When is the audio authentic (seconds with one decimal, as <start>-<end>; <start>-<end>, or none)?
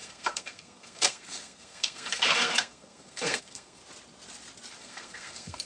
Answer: 3.8-4.8